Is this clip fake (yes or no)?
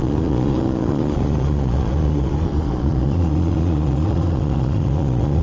yes